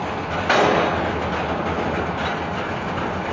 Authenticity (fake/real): real